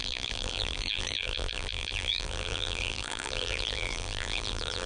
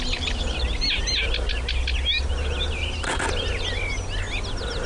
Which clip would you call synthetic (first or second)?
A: first